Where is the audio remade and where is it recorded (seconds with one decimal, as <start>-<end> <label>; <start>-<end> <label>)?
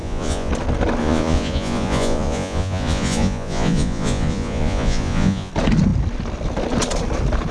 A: 0.0-0.5 remade; 0.5-1.0 recorded; 1.0-5.5 remade; 5.5-7.5 recorded